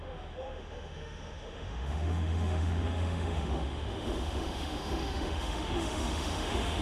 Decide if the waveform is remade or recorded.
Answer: remade